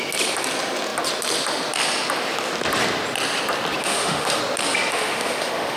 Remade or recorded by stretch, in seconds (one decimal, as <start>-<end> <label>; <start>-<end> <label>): 0.0-3.8 recorded; 3.8-4.4 remade; 4.4-4.9 recorded; 4.9-5.8 remade